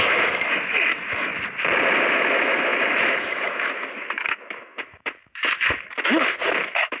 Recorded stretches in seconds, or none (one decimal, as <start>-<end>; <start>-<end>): 1.3-2.1